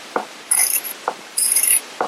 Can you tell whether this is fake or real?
fake